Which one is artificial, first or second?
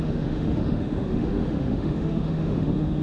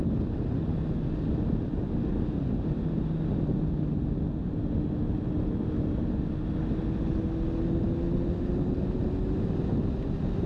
first